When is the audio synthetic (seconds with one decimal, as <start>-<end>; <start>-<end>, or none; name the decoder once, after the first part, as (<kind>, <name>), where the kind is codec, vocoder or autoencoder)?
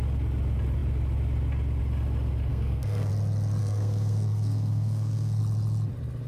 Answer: 2.5-3.1 (codec, SNAC); 3.6-5.4